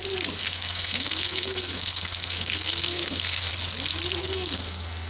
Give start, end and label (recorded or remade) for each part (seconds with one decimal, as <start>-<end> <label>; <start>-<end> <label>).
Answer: 0.0-0.4 recorded; 0.4-3.5 remade; 3.5-4.2 recorded; 4.2-5.1 remade